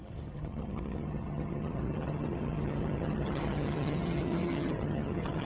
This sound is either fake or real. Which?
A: fake